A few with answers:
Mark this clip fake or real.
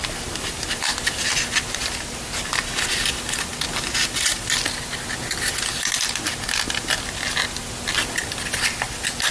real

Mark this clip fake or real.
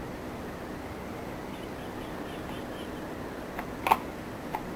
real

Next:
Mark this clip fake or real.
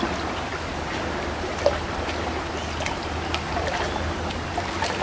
fake